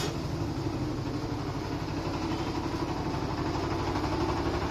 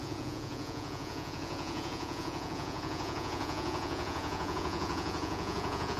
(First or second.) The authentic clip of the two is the first